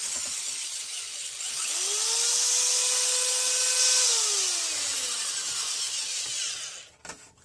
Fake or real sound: real